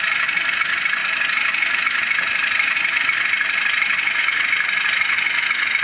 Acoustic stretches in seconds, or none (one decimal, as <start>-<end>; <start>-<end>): 0.0-1.0; 4.2-5.8